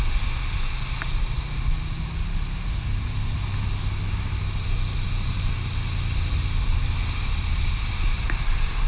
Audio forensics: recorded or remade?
recorded